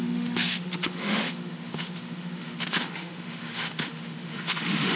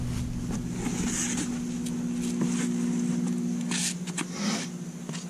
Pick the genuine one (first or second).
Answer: second